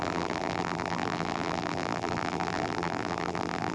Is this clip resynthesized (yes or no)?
yes